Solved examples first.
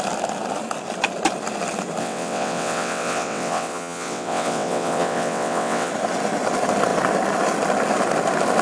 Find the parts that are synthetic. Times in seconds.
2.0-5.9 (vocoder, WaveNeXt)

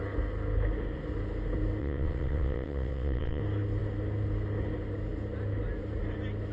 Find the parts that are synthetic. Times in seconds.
1.8-3.4 (vocoder, WaveNeXt)

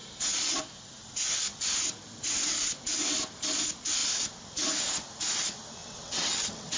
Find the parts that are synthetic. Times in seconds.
5.8-6.8 (vocoder, WaveNeXt)

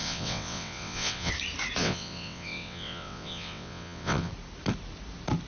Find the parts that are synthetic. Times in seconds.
0.0-1.3 (vocoder, WaveNeXt); 1.8-4.3

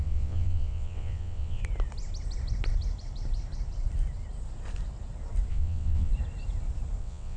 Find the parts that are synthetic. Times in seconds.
0.0-1.6 (vocoder, WaveNeXt); 5.5-6.1; 7.0-7.4

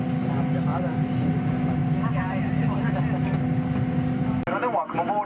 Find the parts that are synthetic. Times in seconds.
none